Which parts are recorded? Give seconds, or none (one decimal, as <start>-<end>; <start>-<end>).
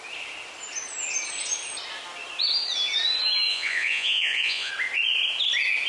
0.0-3.5; 4.7-5.9